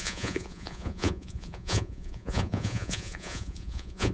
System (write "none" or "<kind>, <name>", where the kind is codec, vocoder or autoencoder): vocoder, Vocos